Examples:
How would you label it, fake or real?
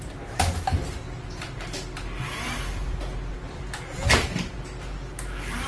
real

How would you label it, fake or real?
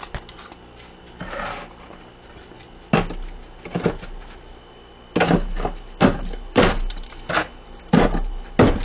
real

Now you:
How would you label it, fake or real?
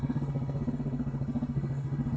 fake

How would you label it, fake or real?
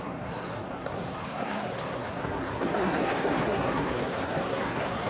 fake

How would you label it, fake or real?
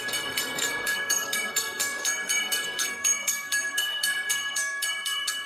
fake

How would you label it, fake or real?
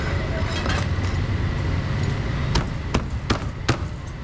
real